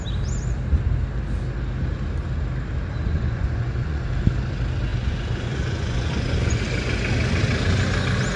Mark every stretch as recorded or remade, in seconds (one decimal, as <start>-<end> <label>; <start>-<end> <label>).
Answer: 0.0-3.1 recorded; 3.1-4.0 remade; 4.0-4.9 recorded; 4.9-6.6 remade; 6.6-8.4 recorded